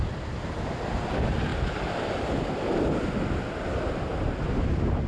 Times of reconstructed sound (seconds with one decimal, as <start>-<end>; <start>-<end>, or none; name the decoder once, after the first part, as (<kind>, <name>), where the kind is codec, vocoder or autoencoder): none